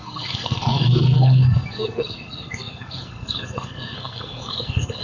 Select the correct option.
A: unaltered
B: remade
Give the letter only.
B